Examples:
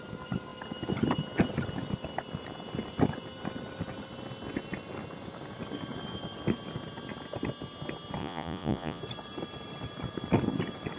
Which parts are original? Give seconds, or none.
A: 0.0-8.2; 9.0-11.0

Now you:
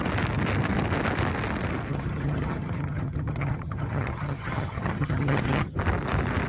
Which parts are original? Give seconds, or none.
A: 0.0-1.9; 5.8-6.5

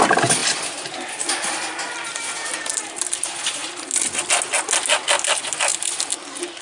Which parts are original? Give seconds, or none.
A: 0.0-0.4; 2.8-3.6; 4.2-6.6